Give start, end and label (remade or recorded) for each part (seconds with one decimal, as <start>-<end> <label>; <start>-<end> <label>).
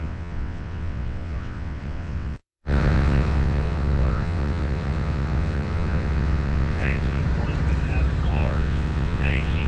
0.0-7.2 remade; 7.2-8.3 recorded; 8.3-9.7 remade